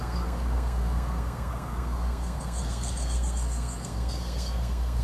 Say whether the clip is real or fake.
fake